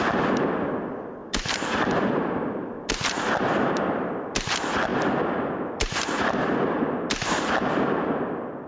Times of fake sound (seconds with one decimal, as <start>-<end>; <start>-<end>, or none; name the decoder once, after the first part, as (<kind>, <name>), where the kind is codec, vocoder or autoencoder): none

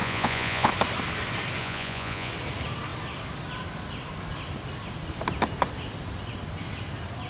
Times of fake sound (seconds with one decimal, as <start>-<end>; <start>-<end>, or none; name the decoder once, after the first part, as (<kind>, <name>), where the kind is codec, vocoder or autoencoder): 0.0-0.7 (vocoder, Vocos); 1.6-2.3

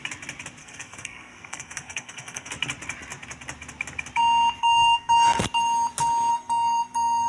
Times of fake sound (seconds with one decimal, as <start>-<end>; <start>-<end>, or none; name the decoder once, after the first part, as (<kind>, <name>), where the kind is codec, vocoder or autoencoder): 0.6-2.5 (codec, SNAC); 4.6-5.4; 6.3-7.3

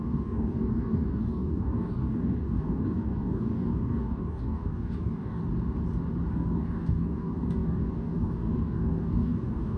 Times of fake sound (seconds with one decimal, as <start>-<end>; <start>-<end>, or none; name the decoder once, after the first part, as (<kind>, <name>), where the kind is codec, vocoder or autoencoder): 0.0-5.4 (codec, DAC); 6.3-9.8

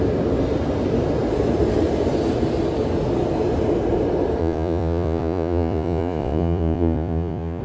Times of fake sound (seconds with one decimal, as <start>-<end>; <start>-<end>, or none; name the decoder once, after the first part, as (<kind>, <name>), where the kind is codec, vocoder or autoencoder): 4.4-7.6 (vocoder, Vocos)